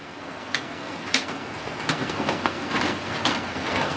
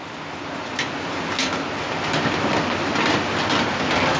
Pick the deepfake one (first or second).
first